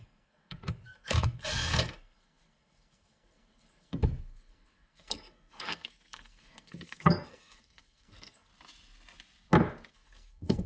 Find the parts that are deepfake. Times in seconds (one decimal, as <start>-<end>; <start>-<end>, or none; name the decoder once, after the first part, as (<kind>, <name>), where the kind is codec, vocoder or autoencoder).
0.0-8.5 (codec, SNAC); 9.9-10.7